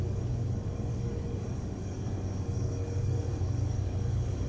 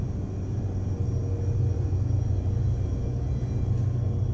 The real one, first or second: second